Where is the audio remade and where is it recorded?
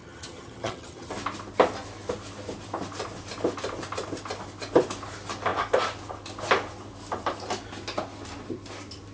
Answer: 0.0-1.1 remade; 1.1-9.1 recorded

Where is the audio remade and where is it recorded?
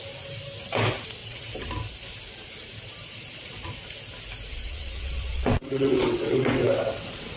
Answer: 0.0-1.2 recorded; 1.2-1.7 remade; 1.7-4.5 recorded; 4.5-7.4 remade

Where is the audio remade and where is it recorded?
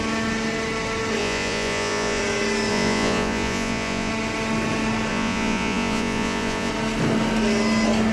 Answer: 0.0-1.2 recorded; 1.2-2.2 remade; 2.2-2.7 recorded; 2.7-4.1 remade; 4.1-5.1 recorded; 5.1-6.7 remade; 6.7-8.1 recorded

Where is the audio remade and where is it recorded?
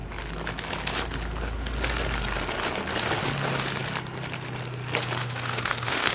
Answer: 0.0-5.2 recorded; 5.2-6.1 remade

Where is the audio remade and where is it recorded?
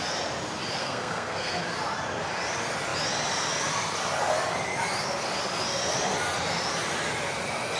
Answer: 0.0-0.8 recorded; 0.8-1.6 remade; 1.6-7.8 recorded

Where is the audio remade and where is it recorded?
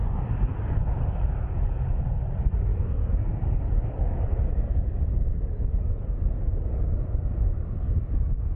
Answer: 0.0-8.6 recorded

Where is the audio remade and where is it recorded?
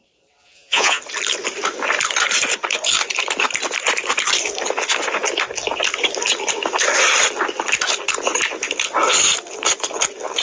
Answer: 0.0-0.4 recorded; 0.4-1.0 remade; 1.0-10.4 recorded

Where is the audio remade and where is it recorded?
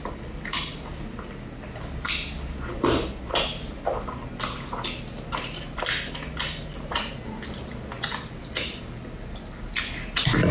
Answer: 0.0-6.7 recorded; 6.7-7.3 remade; 7.3-10.5 recorded